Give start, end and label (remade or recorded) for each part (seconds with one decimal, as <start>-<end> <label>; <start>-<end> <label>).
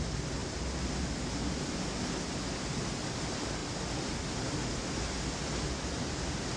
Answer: 0.0-6.6 recorded